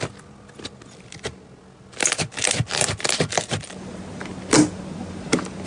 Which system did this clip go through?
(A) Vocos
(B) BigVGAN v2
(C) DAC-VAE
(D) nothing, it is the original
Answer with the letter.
D